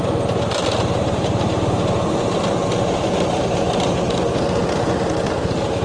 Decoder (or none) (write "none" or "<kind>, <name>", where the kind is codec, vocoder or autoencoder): none